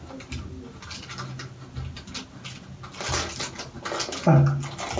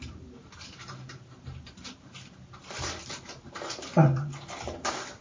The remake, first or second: second